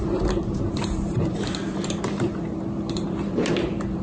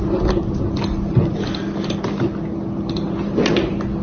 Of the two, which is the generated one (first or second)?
first